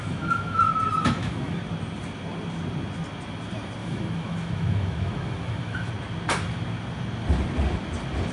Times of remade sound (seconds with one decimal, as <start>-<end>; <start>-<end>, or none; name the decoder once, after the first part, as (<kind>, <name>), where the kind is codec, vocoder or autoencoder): 0.0-0.6 (autoencoder, DAC-VAE); 1.0-1.6; 3.8-5.9